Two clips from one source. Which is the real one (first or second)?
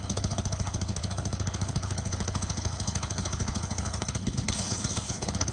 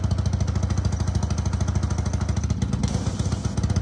second